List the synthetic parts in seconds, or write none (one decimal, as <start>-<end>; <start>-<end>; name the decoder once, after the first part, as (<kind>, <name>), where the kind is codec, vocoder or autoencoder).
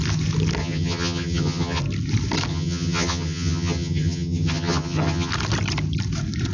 0.6-1.8 (vocoder, HiFi-GAN); 2.5-5.3